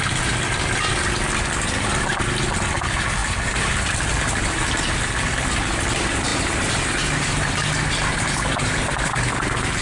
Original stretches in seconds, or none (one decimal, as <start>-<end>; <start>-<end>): 0.0-6.3; 9.1-9.8